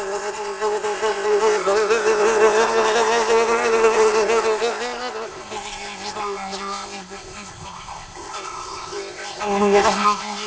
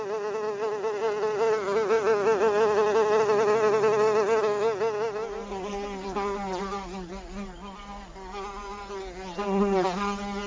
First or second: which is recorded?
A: second